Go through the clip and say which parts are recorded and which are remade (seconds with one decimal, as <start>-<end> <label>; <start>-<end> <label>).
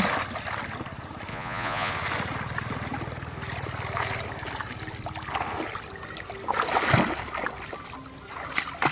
0.0-1.3 recorded; 1.3-1.9 remade; 1.9-8.9 recorded